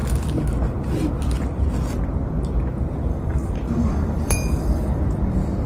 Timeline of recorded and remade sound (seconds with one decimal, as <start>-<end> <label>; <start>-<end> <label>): 0.0-3.1 recorded; 3.1-5.0 remade; 5.0-5.7 recorded